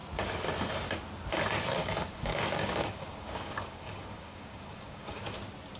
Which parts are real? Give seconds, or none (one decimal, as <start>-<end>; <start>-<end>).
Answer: 0.0-1.8; 5.3-5.8